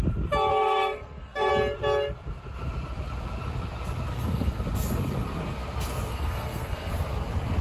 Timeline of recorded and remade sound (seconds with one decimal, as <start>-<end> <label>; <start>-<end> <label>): 0.0-0.5 recorded; 0.5-1.5 remade; 1.5-4.1 recorded; 4.1-4.6 remade; 4.6-6.1 recorded; 6.1-6.9 remade; 6.9-7.6 recorded